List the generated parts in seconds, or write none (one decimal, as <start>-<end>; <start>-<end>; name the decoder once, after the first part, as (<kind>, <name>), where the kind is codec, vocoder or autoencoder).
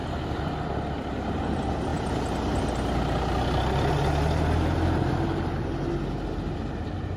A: none